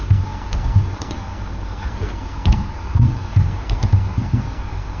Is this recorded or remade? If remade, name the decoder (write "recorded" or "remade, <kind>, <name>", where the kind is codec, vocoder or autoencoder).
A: remade, codec, SNAC